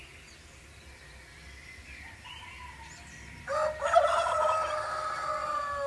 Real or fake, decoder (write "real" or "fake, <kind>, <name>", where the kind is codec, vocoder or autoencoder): real